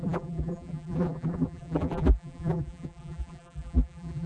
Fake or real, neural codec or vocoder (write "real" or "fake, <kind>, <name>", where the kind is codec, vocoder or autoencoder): fake, vocoder, BigVGAN v2